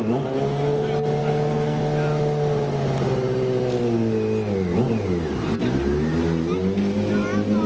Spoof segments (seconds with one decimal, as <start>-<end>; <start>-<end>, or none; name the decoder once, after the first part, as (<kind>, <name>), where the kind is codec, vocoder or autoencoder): 1.2-1.8 (codec, SNAC)